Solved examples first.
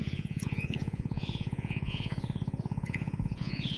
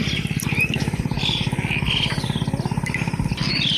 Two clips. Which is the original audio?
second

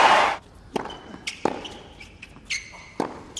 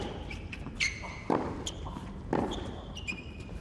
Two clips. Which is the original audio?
first